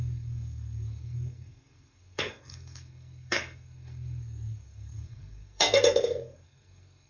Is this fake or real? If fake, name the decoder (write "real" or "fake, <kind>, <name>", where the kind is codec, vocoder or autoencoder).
fake, codec, SNAC